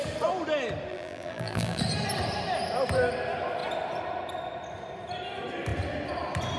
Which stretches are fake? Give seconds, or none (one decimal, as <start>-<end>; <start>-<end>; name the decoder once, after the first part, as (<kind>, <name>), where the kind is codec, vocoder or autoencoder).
0.9-1.8 (vocoder, BigVGAN v2)